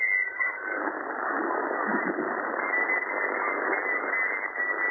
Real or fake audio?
real